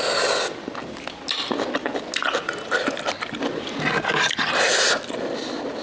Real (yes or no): yes